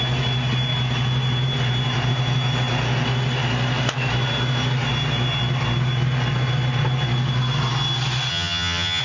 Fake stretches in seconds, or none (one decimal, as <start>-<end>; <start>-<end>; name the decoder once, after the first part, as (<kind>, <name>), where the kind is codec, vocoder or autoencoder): 8.3-9.0 (vocoder, HiFi-GAN)